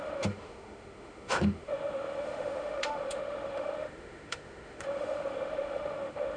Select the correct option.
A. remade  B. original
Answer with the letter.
A